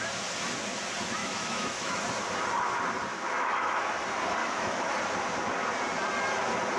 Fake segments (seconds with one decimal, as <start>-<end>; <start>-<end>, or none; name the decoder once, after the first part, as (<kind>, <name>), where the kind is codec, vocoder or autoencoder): 1.2-2.0 (autoencoder, DAC-VAE); 3.1-3.8; 4.4-4.9